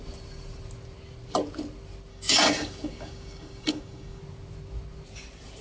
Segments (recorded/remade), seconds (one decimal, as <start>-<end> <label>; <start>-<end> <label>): 0.0-2.1 recorded; 2.1-4.2 remade; 4.2-5.6 recorded